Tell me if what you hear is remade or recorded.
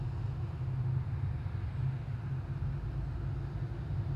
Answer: recorded